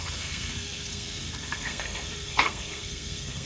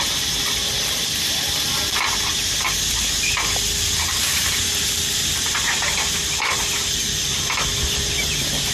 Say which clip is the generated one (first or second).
first